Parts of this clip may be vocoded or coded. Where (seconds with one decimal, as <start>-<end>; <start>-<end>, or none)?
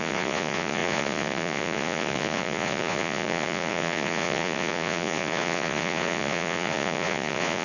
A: 0.0-7.6